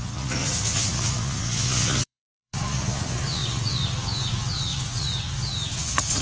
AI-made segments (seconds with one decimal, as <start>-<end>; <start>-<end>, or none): 0.0-6.2